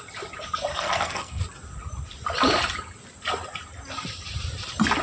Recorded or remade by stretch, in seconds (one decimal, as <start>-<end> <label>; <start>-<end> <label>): 0.0-0.7 recorded; 0.7-1.4 remade; 1.4-5.0 recorded